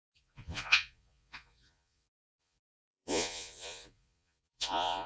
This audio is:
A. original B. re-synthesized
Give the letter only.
B